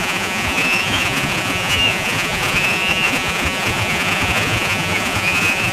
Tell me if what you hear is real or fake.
fake